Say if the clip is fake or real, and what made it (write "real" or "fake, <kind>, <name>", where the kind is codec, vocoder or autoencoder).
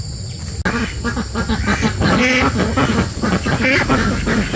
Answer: real